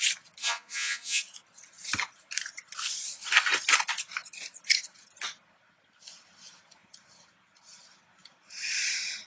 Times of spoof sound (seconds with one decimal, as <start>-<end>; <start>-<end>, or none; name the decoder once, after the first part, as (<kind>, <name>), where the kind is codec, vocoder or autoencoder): 0.4-1.2 (vocoder, Vocos)